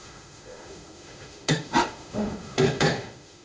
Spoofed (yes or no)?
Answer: yes